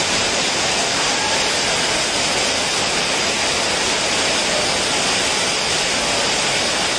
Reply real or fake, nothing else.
real